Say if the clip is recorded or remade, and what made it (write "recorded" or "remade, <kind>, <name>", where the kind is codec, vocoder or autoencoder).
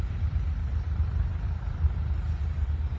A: remade, vocoder, BigVGAN v2